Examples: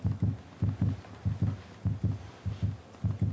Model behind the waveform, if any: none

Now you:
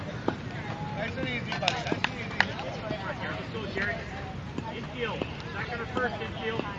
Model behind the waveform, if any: none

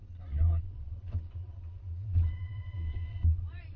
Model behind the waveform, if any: vocoder, Vocos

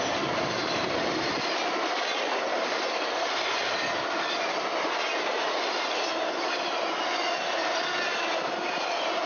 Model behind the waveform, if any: none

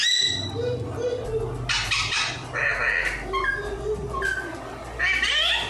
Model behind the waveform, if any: none